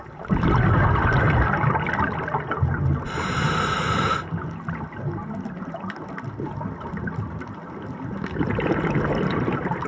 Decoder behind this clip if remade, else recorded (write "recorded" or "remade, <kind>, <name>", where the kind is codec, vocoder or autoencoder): recorded